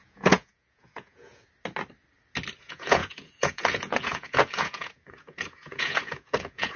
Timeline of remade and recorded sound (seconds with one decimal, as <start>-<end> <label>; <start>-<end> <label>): 0.0-1.4 remade; 1.4-2.6 recorded; 2.6-6.8 remade